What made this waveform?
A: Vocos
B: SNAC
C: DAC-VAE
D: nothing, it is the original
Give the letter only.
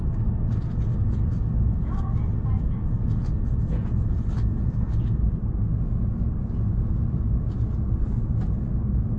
D